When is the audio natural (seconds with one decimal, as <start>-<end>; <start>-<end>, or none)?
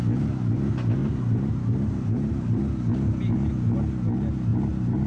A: 0.0-1.0; 2.6-4.5